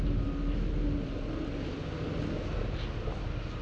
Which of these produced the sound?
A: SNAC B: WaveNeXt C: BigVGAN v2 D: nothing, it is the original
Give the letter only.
D